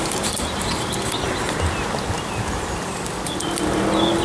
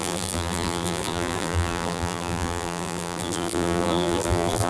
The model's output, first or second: second